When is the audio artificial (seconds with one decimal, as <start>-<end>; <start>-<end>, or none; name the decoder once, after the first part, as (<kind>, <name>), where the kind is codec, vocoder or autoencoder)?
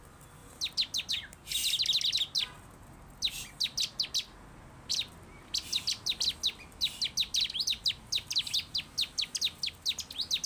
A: none